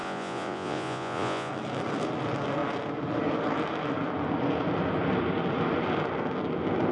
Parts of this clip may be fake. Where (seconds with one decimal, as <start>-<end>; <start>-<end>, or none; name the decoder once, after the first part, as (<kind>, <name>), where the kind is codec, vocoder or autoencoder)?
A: 0.0-1.5 (vocoder, Vocos)